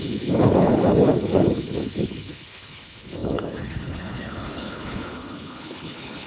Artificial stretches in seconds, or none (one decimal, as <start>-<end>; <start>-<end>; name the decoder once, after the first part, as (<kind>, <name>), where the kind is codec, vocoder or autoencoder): 0.0-6.3 (codec, HILCodec)